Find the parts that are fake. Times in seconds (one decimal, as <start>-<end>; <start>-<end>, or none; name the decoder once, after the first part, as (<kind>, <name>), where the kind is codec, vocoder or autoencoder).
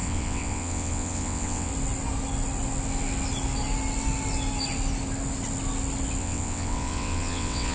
0.0-1.7 (vocoder, WaveNeXt); 6.2-7.7